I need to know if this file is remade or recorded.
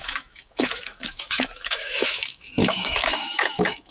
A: remade